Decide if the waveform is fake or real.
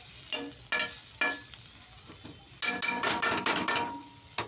real